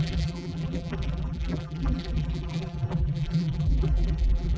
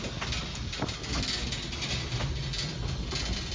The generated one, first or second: first